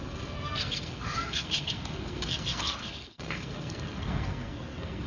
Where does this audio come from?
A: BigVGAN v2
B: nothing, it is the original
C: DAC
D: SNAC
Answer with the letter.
D